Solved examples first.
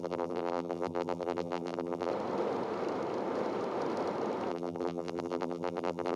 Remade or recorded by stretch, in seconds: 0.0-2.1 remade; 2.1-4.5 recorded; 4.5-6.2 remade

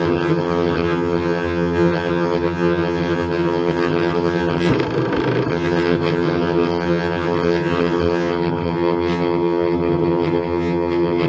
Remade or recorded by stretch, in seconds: 0.0-4.7 remade; 4.7-5.5 recorded; 5.5-11.3 remade

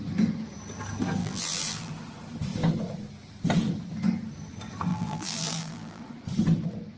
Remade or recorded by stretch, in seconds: 0.0-1.2 recorded; 1.2-1.9 remade; 1.9-4.9 recorded; 4.9-6.0 remade; 6.0-7.0 recorded

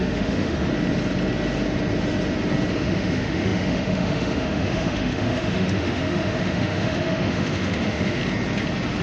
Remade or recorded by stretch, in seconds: 0.0-0.7 remade; 0.7-2.7 recorded; 2.7-8.2 remade; 8.2-9.0 recorded

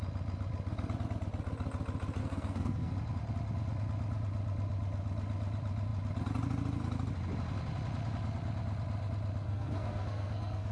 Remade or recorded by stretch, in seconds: 0.0-2.2 recorded; 2.2-2.9 remade; 2.9-9.4 recorded; 9.4-10.7 remade

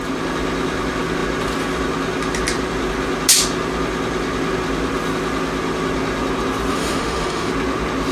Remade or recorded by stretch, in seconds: 0.0-6.7 recorded; 6.7-7.5 remade; 7.5-8.1 recorded

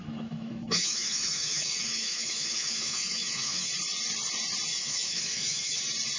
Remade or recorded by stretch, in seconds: 0.0-3.7 remade; 3.7-4.7 recorded; 4.7-5.8 remade; 5.8-6.2 recorded

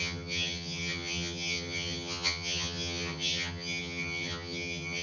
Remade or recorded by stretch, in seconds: 0.0-5.0 remade